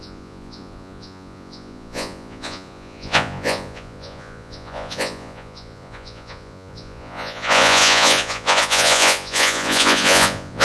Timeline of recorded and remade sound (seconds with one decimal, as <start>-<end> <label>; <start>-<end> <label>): 0.0-10.6 remade